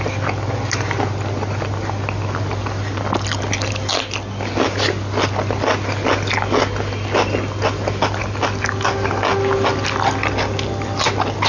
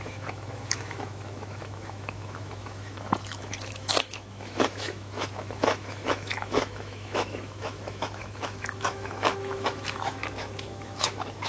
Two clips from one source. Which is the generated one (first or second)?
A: second